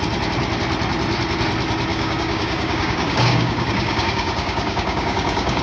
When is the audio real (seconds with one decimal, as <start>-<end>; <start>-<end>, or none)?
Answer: 0.0-1.9